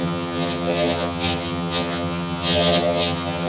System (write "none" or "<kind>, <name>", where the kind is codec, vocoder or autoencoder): vocoder, HiFi-GAN